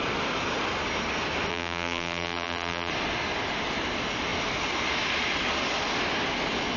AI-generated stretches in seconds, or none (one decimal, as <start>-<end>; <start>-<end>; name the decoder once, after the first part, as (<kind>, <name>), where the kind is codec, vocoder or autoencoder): 1.5-2.9 (vocoder, BigVGAN v2)